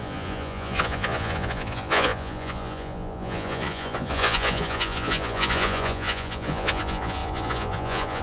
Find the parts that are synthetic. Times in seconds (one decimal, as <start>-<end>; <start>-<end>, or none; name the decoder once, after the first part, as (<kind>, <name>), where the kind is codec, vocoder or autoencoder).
0.0-8.2 (vocoder, Vocos)